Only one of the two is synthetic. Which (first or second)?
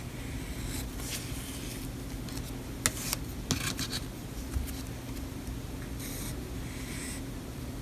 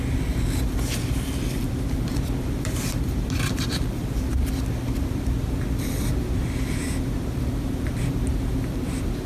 second